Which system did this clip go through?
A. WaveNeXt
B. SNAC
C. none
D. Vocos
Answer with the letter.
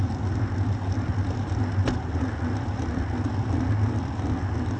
C